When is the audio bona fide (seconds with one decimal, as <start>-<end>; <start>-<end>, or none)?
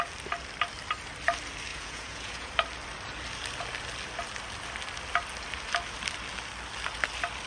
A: 0.0-1.7; 2.5-7.5